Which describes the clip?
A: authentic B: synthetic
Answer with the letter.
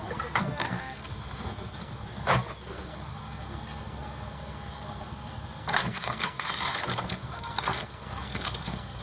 B